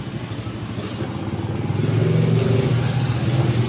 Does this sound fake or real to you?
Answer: real